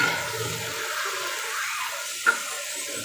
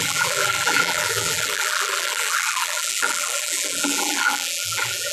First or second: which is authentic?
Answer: first